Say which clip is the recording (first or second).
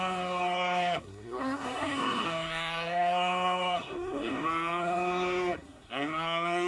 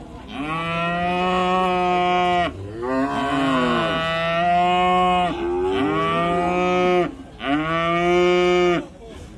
second